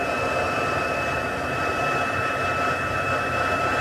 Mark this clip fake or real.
fake